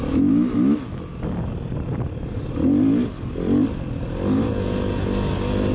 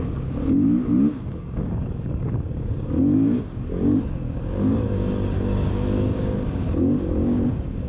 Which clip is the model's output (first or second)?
second